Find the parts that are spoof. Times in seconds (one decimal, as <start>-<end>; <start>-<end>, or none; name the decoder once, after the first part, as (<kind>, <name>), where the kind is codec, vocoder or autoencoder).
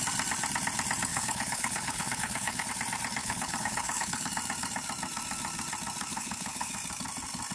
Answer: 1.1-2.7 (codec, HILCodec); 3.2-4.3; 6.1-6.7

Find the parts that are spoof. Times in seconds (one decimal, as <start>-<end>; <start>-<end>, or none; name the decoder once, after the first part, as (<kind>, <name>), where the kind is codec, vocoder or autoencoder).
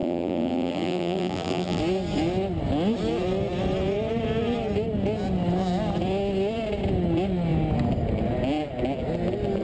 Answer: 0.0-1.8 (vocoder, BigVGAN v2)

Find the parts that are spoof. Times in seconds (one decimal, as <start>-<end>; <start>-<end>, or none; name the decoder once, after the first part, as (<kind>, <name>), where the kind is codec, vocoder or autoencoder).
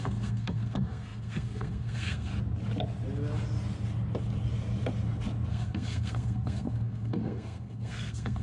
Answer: 0.0-2.3 (codec, SNAC); 5.5-8.4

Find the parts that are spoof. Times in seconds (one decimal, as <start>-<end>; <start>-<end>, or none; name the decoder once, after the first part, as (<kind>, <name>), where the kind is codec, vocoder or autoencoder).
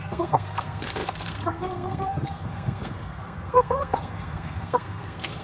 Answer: 0.0-5.4 (codec, SNAC)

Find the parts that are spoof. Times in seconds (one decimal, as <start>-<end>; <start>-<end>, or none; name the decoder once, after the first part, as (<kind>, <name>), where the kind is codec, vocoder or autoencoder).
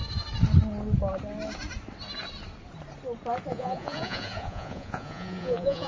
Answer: 3.5-5.9 (vocoder, Vocos)